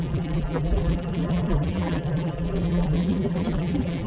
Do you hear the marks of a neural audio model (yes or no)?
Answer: yes